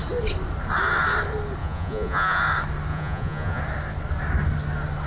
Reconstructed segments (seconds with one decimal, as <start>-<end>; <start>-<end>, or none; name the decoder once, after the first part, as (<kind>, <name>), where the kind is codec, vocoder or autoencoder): 1.6-2.4 (vocoder, Vocos); 2.9-3.6